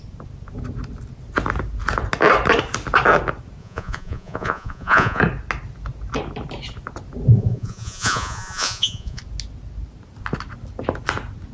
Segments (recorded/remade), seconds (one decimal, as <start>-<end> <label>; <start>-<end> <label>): 0.0-3.6 recorded; 3.6-5.2 remade; 5.2-7.3 recorded; 7.3-9.2 remade; 9.2-11.5 recorded